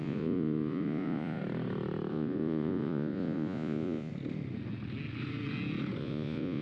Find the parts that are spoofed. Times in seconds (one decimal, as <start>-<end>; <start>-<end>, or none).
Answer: 0.0-1.4; 2.1-4.1; 6.0-6.6